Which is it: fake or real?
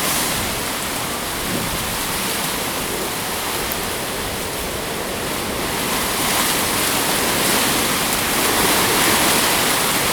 real